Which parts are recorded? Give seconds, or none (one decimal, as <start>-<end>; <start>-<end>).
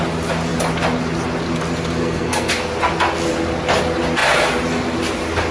0.0-2.0; 2.5-5.5